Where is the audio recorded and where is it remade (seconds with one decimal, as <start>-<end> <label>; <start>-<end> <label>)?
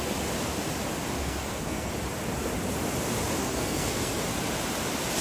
0.0-1.2 recorded; 1.2-1.9 remade; 1.9-3.4 recorded; 3.4-4.2 remade; 4.2-5.2 recorded